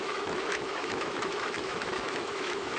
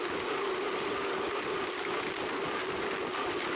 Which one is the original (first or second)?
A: second